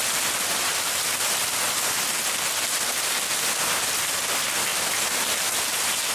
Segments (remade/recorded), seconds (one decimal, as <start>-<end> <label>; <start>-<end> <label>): 0.0-6.1 recorded